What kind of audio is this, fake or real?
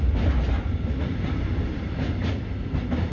real